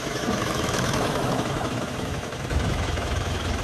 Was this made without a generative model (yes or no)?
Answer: no